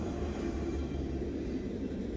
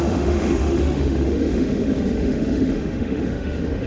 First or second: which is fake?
second